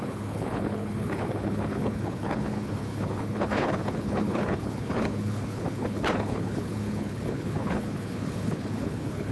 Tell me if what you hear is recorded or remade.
remade